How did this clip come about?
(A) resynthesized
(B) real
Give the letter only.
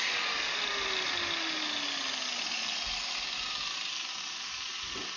B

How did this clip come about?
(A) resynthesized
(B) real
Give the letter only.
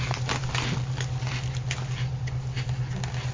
B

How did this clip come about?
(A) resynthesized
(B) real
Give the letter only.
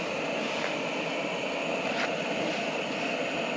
B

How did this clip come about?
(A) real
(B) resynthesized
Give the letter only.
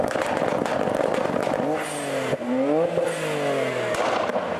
A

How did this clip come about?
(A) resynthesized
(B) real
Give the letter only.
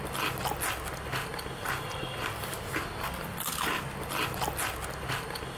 B